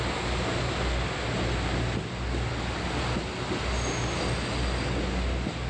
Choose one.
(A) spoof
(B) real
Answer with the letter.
B